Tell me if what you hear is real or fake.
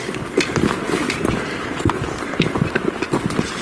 real